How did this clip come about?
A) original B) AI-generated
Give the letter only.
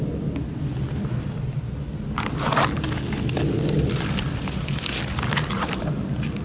A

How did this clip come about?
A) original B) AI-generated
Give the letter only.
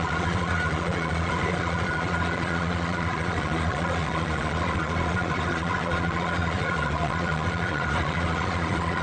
B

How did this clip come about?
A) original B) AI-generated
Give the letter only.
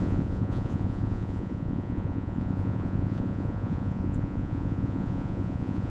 B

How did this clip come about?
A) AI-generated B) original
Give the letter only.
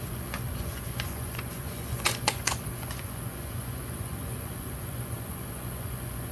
A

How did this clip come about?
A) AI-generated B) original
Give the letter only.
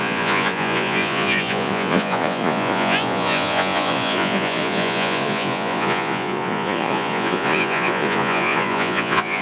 A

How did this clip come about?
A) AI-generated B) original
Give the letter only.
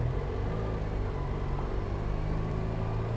B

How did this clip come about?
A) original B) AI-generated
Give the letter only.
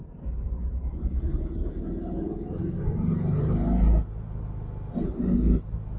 A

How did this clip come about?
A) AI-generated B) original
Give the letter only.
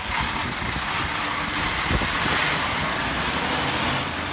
B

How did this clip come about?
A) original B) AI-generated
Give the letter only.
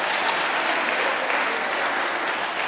A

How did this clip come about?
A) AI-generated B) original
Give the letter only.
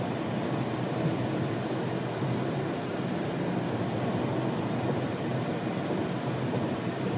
B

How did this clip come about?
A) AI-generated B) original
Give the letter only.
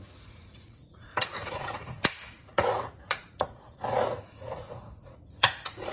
A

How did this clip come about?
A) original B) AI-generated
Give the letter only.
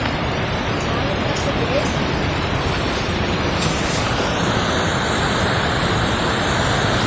A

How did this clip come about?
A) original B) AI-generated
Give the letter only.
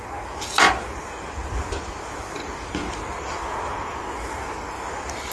A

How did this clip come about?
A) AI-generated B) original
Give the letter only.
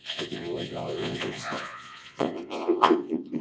A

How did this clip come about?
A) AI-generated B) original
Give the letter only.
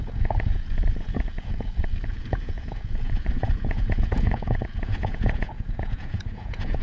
A